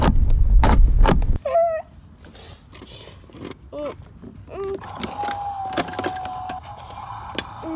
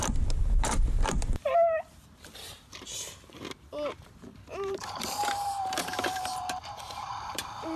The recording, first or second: first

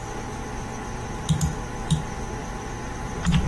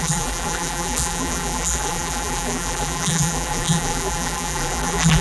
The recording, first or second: first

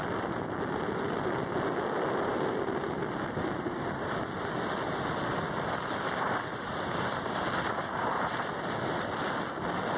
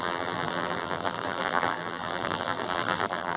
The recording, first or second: first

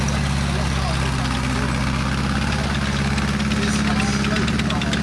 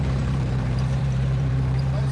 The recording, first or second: first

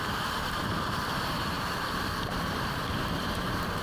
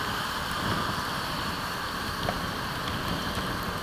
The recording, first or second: second